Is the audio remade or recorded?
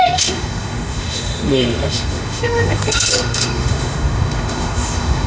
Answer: remade